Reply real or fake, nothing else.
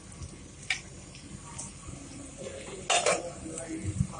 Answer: real